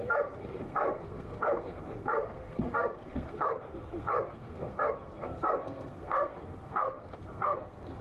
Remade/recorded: remade